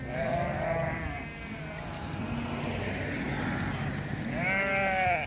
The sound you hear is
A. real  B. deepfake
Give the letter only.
A